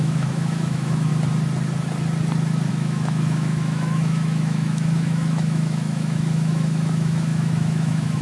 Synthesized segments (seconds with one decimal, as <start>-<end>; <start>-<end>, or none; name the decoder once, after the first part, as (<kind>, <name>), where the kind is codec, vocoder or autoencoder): 0.0-1.1 (autoencoder, DAC-VAE); 2.7-8.2